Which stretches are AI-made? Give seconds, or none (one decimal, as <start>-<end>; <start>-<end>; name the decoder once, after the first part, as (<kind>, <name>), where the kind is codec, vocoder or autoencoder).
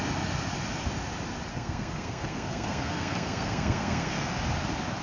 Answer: 1.5-4.3 (codec, SNAC)